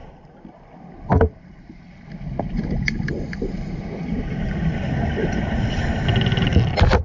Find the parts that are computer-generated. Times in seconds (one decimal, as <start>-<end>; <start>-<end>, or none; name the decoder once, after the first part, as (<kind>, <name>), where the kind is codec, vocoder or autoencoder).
none